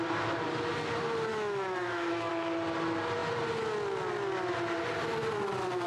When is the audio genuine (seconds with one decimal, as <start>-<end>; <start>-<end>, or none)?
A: 0.0-1.3; 2.3-5.9